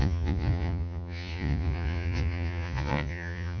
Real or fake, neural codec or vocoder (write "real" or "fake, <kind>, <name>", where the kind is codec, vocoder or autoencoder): fake, vocoder, Vocos